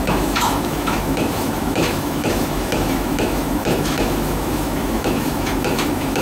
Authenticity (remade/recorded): remade